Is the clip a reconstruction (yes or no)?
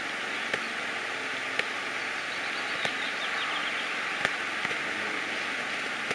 no